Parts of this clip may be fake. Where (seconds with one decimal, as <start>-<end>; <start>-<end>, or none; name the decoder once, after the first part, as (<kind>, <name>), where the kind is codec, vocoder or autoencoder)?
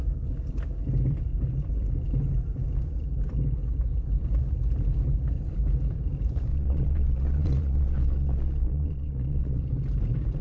6.5-9.6 (vocoder, Vocos)